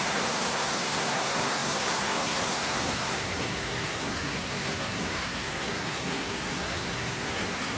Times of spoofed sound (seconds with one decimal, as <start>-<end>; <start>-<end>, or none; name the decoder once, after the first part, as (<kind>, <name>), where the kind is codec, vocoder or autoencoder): 0.0-7.8 (codec, SNAC)